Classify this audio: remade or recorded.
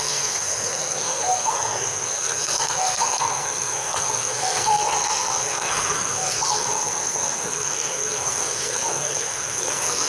remade